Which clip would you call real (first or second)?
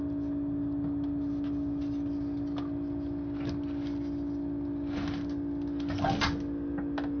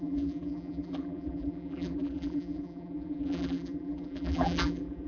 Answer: first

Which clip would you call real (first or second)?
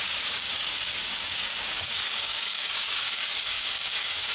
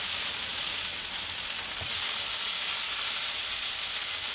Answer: second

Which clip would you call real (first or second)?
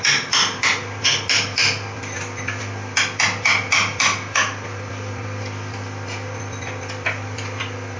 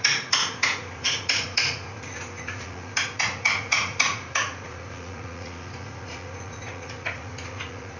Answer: first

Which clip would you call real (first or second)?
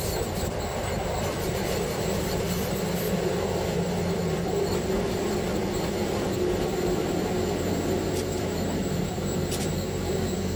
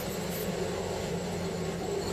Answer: second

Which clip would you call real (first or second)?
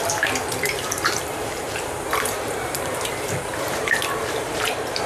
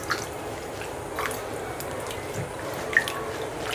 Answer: second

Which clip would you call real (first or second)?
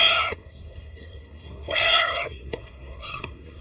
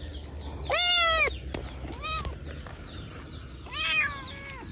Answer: second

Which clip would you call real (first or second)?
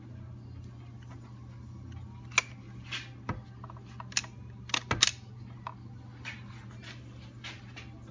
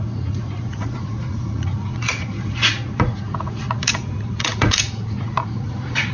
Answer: first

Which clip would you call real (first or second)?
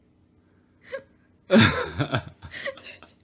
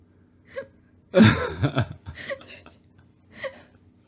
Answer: first